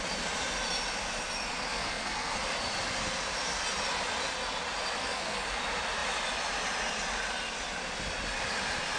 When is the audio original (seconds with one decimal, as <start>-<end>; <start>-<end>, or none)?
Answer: 0.0-1.7; 2.4-5.0; 5.6-9.0